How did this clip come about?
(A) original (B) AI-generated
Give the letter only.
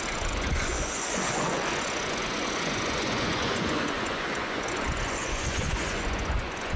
B